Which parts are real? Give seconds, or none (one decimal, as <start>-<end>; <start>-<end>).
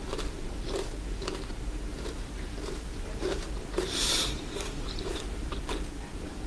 0.0-1.9; 5.5-6.5